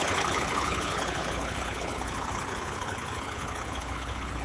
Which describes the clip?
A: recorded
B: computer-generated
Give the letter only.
B